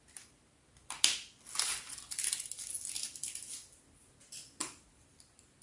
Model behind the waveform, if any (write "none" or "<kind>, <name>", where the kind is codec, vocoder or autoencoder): none